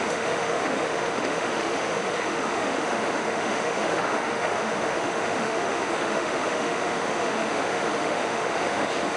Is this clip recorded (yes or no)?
no